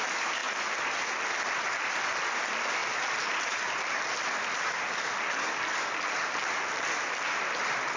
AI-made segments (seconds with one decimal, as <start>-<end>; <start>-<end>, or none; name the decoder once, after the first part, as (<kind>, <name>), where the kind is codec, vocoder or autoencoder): none